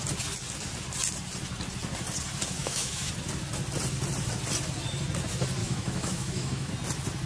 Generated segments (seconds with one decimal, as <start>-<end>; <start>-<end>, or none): 2.6-3.1; 5.6-6.7